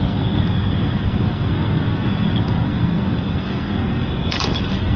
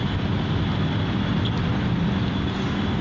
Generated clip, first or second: first